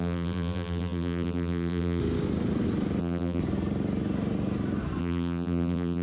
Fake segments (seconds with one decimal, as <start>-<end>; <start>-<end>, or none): 0.0-2.0; 3.0-3.4; 5.0-6.0

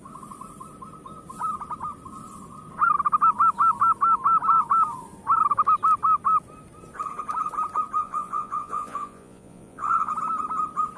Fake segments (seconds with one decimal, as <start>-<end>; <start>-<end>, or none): 8.0-10.1

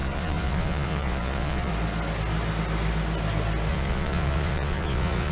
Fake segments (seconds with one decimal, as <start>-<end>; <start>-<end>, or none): 0.0-1.7; 3.7-5.3

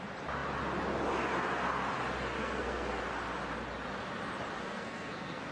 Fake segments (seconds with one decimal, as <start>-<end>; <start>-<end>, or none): 2.4-3.0; 4.6-5.5

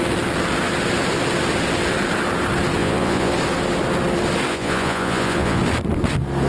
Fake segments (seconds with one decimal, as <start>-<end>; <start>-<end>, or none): 2.8-3.3; 4.5-5.6

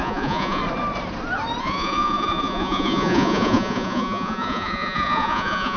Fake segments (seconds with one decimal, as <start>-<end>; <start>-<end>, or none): 0.0-0.6; 1.6-5.8